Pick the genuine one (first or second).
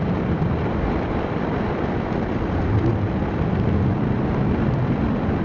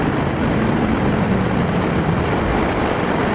second